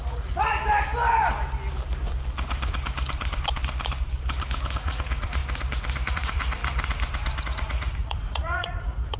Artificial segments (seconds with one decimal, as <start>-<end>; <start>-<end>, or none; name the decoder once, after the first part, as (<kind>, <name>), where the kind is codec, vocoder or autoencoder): 0.0-0.6 (vocoder, Vocos); 4.7-5.4; 6.1-6.6; 7.4-9.2